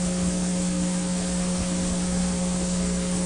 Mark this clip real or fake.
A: fake